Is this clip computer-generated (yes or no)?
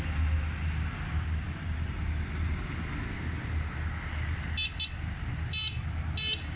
no